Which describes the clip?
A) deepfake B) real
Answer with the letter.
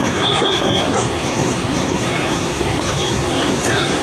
A